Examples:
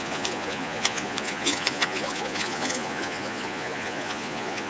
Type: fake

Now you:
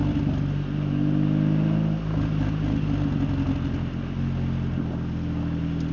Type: real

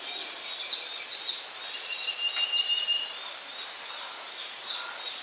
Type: real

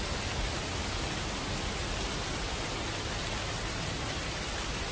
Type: real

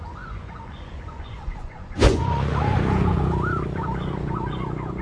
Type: fake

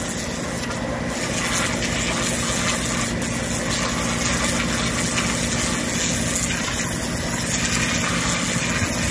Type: real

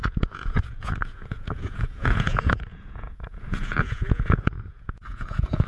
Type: fake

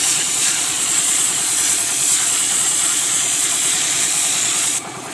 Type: fake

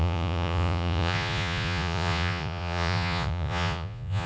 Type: fake